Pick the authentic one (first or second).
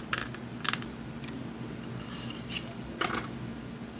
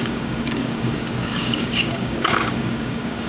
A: first